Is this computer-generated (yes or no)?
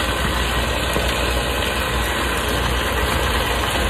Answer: no